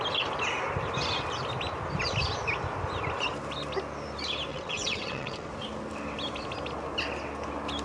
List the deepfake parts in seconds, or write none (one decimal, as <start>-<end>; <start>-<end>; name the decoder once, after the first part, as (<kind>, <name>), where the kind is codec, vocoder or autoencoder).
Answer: 4.5-5.5 (vocoder, WaveNeXt)